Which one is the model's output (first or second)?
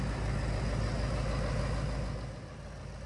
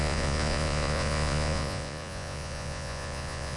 second